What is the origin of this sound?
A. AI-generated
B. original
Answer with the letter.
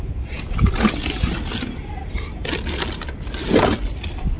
B